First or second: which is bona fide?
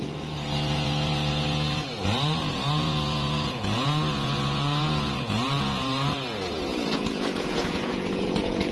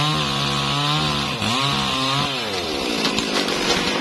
second